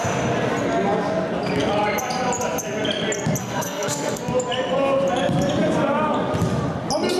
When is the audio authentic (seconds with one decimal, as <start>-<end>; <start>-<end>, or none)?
0.0-3.4; 4.2-7.2